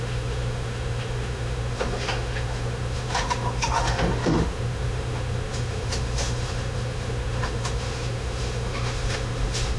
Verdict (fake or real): fake